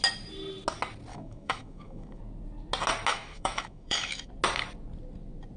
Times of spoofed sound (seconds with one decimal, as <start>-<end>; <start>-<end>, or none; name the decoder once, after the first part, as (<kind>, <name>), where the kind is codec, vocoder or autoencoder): 1.1-2.2 (autoencoder, DAC-VAE); 3.1-4.3